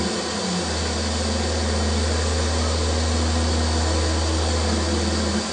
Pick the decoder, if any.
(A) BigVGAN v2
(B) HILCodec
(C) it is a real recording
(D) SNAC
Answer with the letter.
C